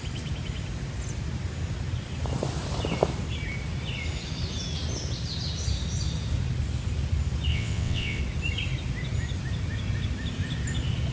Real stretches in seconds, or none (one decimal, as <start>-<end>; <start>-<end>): 0.0-7.5; 8.2-11.1